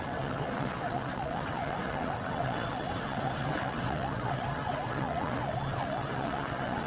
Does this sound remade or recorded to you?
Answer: remade